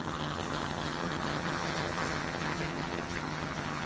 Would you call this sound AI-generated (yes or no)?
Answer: yes